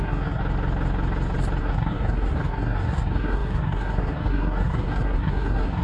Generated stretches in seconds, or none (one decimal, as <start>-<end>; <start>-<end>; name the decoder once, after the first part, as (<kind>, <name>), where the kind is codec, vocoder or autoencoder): 0.0-0.4 (codec, SNAC); 1.6-5.8